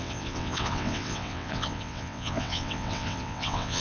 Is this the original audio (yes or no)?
no